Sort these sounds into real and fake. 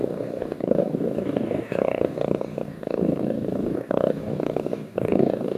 fake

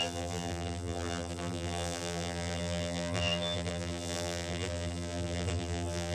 fake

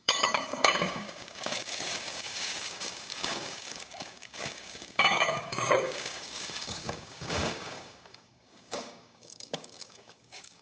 fake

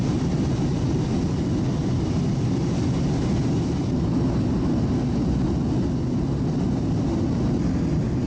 real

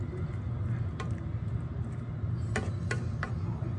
real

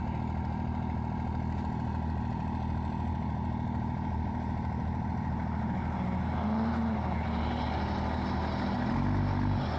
real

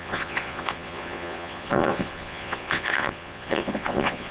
fake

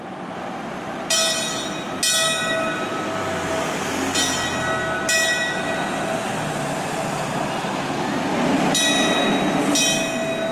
real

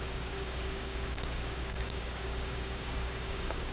fake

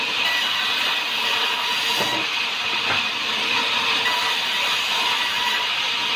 real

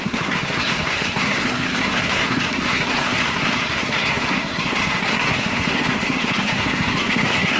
fake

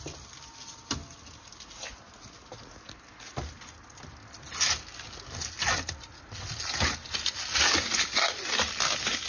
real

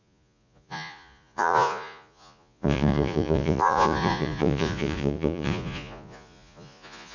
fake